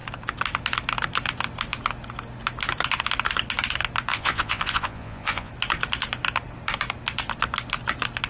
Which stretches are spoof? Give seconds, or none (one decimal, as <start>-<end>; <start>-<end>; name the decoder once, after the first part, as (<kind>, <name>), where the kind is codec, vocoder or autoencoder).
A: 4.1-5.5 (vocoder, Vocos)